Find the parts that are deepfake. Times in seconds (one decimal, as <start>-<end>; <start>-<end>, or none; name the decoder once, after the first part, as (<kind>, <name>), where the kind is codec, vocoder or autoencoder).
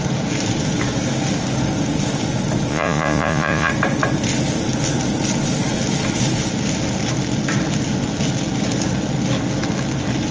2.7-3.7 (vocoder, Vocos)